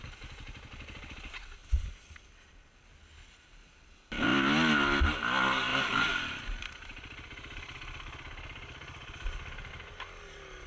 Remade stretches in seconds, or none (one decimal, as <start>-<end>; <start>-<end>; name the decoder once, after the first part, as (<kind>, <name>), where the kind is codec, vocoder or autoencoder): 1.6-2.5 (vocoder, BigVGAN v2); 5.7-9.7